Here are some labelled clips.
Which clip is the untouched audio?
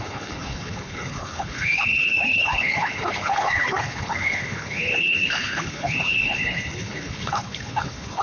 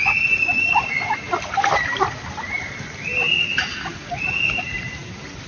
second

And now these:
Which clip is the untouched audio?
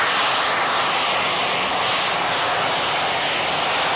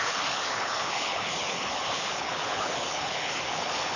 first